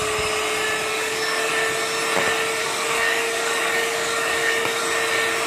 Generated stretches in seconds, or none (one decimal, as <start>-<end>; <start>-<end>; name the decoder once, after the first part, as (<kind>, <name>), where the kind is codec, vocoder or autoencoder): 0.9-1.5 (codec, DAC); 2.6-4.8